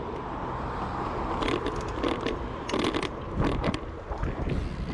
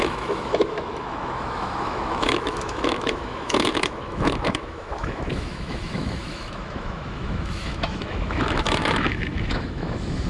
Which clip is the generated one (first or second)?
second